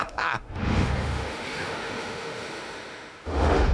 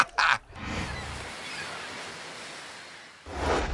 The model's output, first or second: first